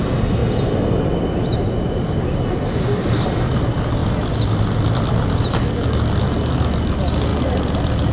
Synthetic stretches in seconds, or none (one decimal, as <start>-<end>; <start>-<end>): none

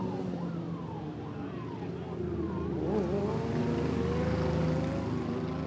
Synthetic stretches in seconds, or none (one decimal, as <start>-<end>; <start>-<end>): none

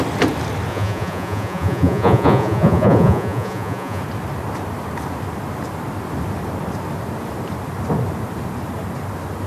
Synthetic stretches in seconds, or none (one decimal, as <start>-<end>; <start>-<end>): 0.7-4.0

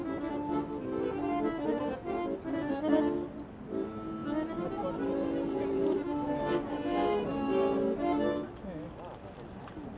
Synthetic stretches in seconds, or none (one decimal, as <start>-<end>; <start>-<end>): 4.2-7.4

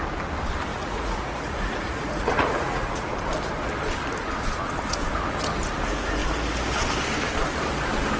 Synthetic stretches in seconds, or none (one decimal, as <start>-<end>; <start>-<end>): 0.7-3.1

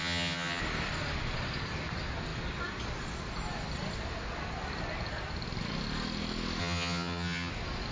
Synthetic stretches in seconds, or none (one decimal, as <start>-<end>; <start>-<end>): 0.0-0.6; 6.6-7.5

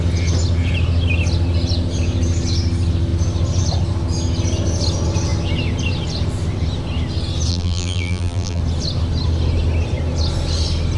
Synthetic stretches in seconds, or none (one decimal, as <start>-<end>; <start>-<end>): 7.5-8.6

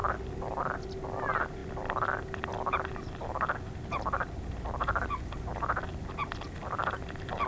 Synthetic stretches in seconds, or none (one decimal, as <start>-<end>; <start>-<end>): none